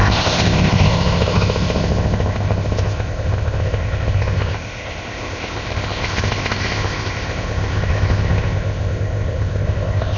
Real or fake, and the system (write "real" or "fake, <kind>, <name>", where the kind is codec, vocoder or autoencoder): fake, codec, ZipCodec